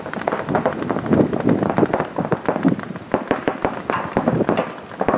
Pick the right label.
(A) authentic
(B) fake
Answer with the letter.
A